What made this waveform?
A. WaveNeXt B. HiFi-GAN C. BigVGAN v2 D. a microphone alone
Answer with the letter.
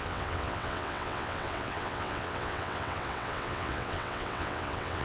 A